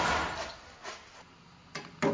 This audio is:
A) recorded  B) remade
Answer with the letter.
A